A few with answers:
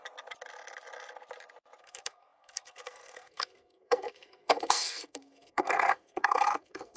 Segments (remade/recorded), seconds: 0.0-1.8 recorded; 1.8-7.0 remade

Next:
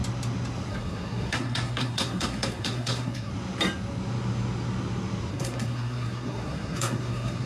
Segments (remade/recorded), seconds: 0.0-0.7 recorded; 0.7-3.3 remade; 3.3-5.3 recorded; 5.3-7.5 remade

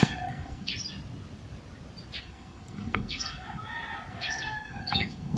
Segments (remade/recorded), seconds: 0.0-0.7 remade; 0.7-2.2 recorded; 2.2-3.6 remade; 3.6-4.1 recorded; 4.1-5.4 remade

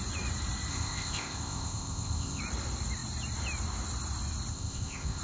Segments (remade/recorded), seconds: 0.0-0.7 recorded; 0.7-2.4 remade; 2.4-4.5 recorded; 4.5-5.2 remade

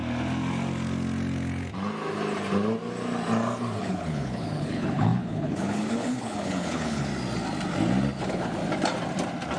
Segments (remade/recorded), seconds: 0.0-3.8 recorded; 3.8-7.1 remade; 7.1-8.2 recorded; 8.2-8.6 remade; 8.6-9.6 recorded

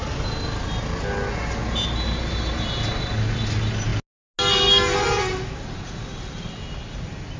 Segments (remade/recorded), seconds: 0.0-7.4 recorded

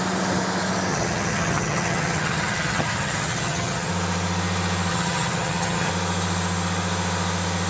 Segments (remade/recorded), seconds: 0.0-0.9 recorded; 0.9-3.9 remade; 3.9-4.9 recorded; 4.9-5.9 remade; 5.9-7.7 recorded

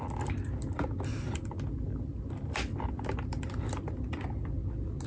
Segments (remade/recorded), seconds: 0.0-1.1 recorded; 1.1-4.2 remade; 4.2-5.1 recorded